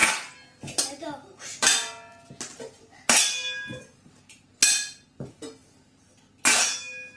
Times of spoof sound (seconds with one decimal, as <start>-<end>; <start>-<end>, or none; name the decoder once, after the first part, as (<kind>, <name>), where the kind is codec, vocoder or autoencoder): none